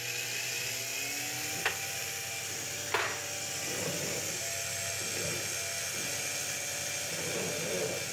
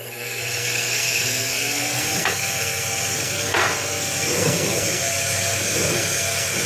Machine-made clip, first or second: second